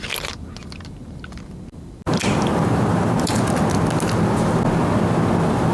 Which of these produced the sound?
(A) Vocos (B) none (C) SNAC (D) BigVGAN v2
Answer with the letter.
B